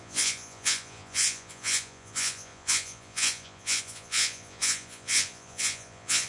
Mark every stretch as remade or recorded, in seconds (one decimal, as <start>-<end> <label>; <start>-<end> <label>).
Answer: 0.0-6.3 remade

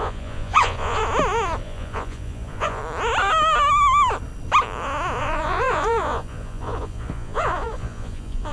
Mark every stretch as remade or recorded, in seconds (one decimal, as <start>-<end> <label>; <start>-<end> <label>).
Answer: 0.0-1.0 remade; 1.0-1.6 recorded; 1.6-2.8 remade; 2.8-5.2 recorded; 5.2-8.5 remade

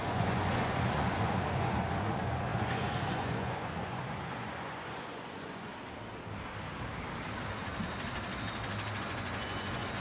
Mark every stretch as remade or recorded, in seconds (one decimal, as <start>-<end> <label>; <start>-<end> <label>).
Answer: 0.0-5.7 remade; 5.7-9.0 recorded; 9.0-10.0 remade

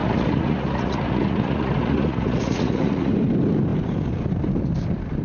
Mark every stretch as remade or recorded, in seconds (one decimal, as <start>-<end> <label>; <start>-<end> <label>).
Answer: 0.0-3.1 remade; 3.1-5.2 recorded

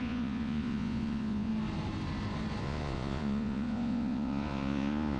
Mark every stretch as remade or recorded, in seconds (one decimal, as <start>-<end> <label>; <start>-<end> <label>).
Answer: 0.0-1.5 remade; 1.5-2.6 recorded; 2.6-5.2 remade

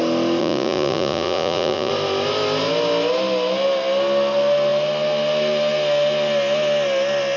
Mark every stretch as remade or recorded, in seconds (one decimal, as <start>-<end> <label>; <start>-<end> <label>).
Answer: 0.0-0.4 recorded; 0.4-1.9 remade; 1.9-7.4 recorded